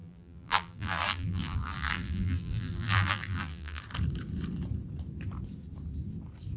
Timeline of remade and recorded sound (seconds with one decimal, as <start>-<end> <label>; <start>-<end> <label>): 0.0-3.8 remade; 3.8-6.6 recorded